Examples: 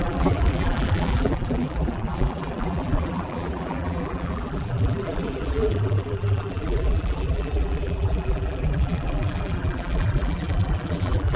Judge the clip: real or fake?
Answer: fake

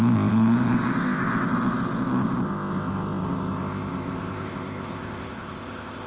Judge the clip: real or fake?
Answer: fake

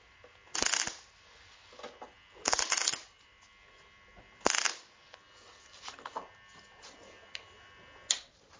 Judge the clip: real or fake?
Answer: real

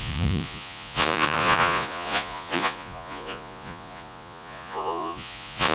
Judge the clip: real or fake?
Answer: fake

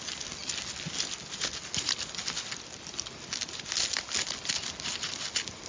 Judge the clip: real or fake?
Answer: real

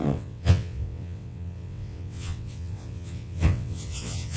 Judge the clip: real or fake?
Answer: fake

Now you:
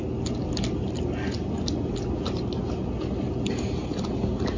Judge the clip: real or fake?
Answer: real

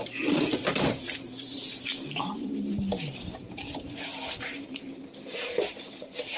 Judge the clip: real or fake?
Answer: fake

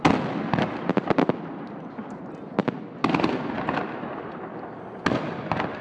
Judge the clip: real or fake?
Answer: real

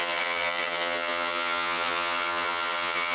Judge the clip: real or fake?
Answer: fake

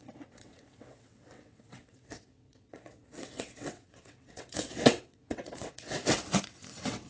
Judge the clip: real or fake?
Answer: fake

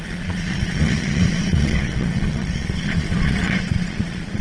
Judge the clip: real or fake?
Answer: fake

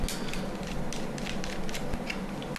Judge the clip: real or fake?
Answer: real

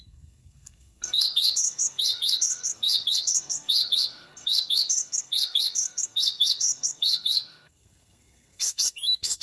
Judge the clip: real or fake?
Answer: fake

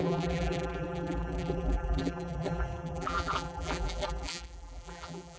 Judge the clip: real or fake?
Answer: fake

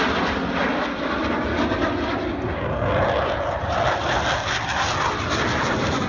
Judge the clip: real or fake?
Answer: real